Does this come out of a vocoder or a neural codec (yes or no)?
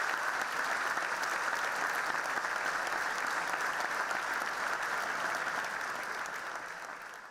no